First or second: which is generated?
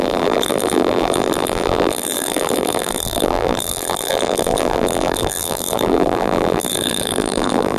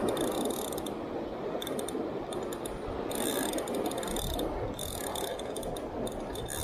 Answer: first